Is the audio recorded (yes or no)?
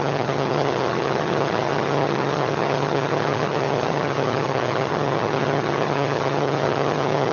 no